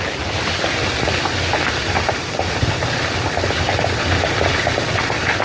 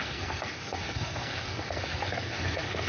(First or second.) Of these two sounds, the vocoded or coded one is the second